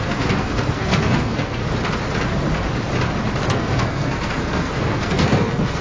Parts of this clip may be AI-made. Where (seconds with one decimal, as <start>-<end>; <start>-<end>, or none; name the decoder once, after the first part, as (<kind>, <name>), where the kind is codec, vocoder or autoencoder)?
0.0-1.6 (codec, SNAC); 3.4-5.8